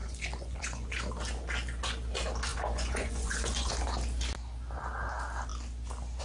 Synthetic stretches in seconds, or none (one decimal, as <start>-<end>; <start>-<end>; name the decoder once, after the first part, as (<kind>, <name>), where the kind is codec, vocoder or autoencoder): 0.0-1.1 (vocoder, Vocos); 2.5-3.7